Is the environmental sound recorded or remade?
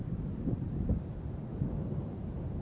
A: recorded